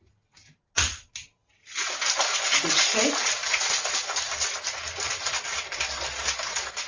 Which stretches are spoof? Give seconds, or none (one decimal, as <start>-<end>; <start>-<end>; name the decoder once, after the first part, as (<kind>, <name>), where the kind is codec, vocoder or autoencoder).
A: 3.4-4.8 (vocoder, BigVGAN v2)